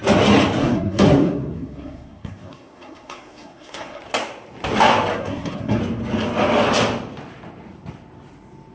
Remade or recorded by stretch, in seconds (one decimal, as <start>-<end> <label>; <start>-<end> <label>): 0.0-0.6 recorded; 0.6-4.0 remade; 4.0-5.1 recorded; 5.1-5.8 remade; 5.8-8.7 recorded